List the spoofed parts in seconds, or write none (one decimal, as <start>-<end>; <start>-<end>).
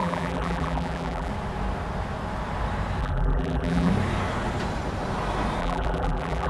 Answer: 0.0-1.3; 3.0-3.9; 5.6-6.5